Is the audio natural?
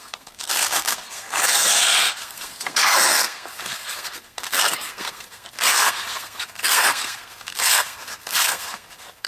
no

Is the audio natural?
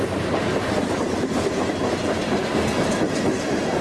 yes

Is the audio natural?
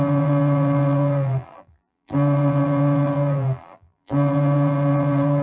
no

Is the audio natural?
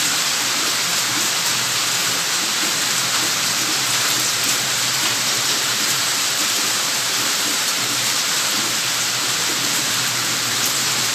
no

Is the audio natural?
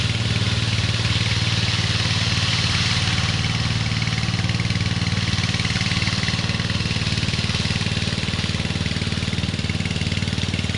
yes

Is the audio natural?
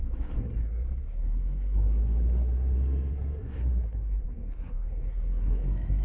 no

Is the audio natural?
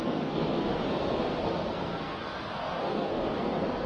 no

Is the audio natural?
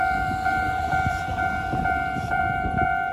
no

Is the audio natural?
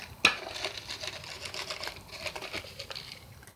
yes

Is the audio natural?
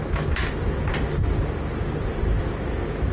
yes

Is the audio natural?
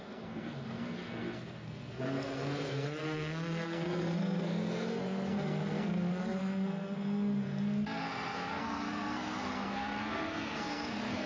no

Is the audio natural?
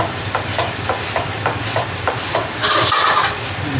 yes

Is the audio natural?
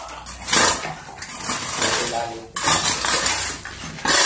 yes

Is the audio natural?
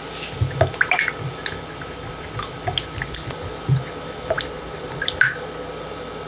yes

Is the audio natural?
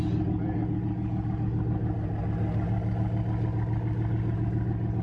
yes